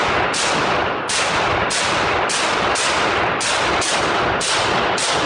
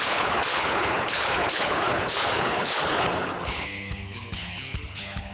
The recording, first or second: first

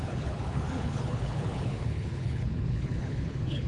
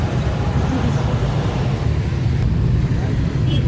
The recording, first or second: second